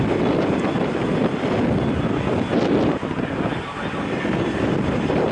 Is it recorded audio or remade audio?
recorded